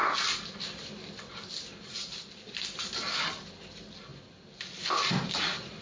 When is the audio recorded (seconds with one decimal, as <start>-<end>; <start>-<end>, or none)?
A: 0.0-5.8